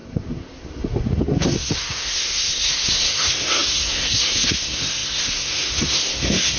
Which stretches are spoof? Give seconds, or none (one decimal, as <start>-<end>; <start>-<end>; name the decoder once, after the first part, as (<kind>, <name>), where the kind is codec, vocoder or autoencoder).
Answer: 0.0-6.6 (codec, SNAC)